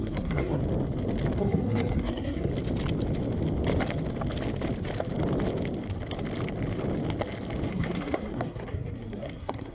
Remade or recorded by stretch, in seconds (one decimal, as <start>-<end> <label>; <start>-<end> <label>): 0.0-0.6 remade; 0.6-1.4 recorded; 1.4-2.5 remade; 2.5-7.7 recorded; 7.7-9.7 remade